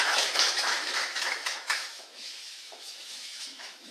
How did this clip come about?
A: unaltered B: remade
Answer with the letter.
B